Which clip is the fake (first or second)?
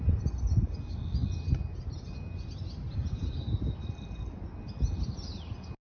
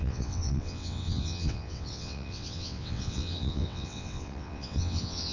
second